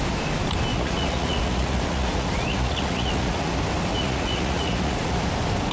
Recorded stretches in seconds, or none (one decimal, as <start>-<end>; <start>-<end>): 0.0-0.7; 3.5-3.9; 5.2-5.7

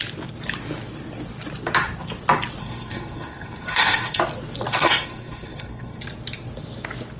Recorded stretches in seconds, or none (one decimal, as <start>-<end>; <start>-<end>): 0.0-2.6; 4.2-4.7; 6.0-7.2

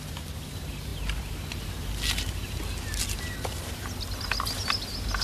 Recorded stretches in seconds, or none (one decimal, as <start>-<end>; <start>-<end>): 0.0-5.2

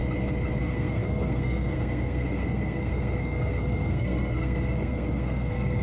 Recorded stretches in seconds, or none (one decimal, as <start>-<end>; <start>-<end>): 0.0-0.6

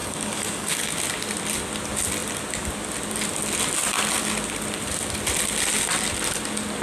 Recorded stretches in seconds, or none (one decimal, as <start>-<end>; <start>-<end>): 0.9-6.8

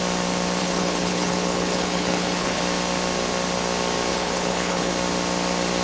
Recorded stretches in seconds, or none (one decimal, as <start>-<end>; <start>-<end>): 0.0-0.6; 2.6-4.1; 4.9-5.8

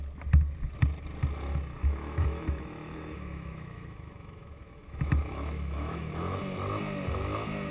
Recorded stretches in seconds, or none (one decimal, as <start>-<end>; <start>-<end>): 0.0-1.8; 6.4-7.7